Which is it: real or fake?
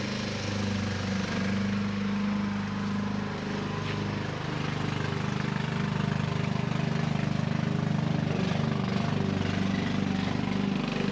real